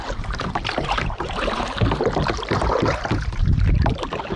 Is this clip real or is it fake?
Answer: fake